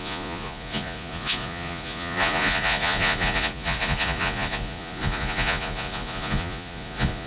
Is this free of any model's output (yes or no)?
no